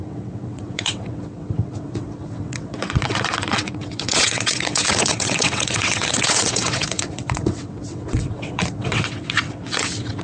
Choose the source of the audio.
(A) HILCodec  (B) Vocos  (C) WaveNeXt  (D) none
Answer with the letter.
C